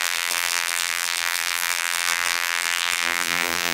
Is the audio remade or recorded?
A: remade